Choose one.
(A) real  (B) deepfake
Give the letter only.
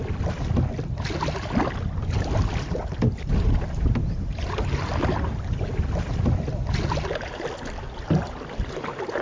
A